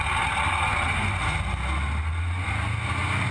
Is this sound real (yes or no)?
yes